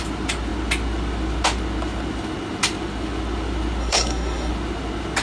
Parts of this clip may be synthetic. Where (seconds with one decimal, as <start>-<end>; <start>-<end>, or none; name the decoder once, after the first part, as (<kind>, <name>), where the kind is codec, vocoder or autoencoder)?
3.8-4.5 (codec, SNAC)